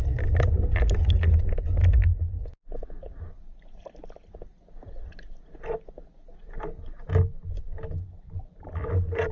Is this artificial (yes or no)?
no